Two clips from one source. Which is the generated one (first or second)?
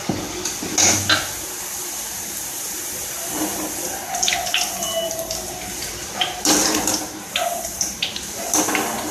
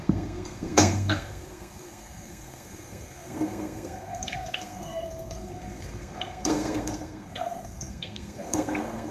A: second